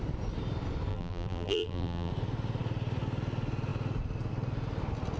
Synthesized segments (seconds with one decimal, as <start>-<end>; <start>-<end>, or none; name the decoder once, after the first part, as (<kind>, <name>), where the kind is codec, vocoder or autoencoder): 0.9-2.1 (vocoder, BigVGAN v2)